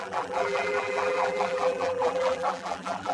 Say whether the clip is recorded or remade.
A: remade